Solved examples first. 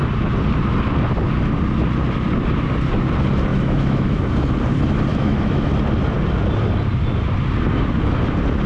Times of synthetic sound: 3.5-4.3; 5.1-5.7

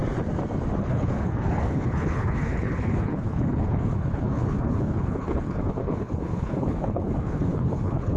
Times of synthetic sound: 0.8-8.2

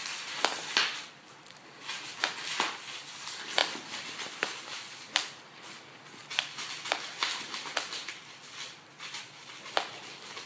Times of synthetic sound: 8.9-9.5

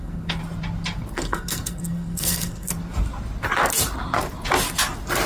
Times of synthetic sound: 0.0-0.4; 1.1-2.7

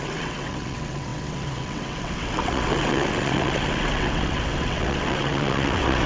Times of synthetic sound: 0.0-6.1

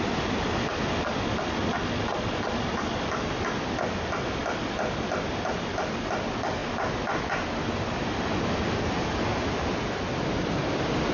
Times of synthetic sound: none

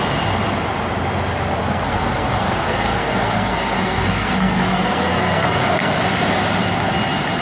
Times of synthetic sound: 1.6-6.0